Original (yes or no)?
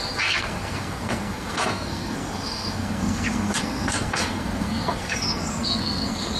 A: no